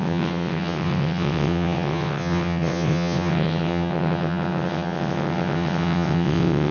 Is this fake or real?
fake